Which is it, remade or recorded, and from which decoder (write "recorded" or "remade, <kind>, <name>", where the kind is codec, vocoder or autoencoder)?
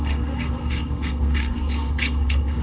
remade, codec, SNAC